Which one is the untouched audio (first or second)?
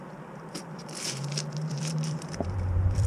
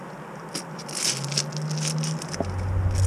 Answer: second